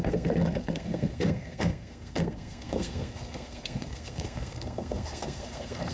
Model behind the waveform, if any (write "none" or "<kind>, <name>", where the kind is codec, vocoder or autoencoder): codec, SNAC